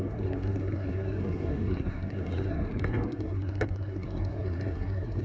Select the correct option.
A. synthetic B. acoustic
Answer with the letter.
A